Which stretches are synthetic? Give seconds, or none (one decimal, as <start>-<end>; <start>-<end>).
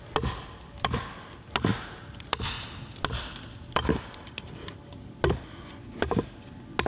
none